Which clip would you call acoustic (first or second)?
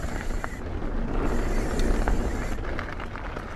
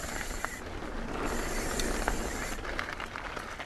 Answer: first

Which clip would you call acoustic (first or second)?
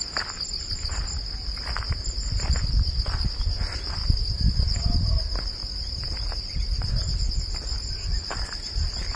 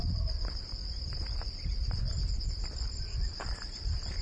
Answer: first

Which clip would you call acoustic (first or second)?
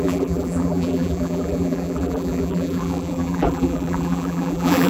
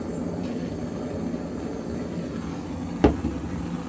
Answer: second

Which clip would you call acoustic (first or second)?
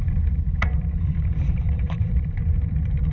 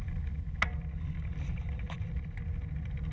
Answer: second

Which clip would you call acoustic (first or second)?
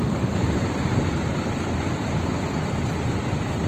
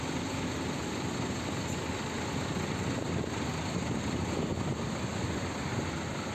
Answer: second